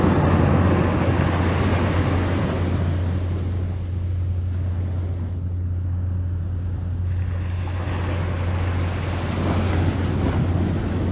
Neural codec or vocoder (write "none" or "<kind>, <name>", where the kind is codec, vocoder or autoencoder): none